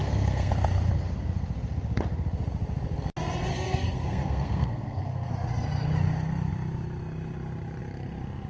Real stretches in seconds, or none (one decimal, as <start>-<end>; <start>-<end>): 0.5-3.5; 5.3-8.5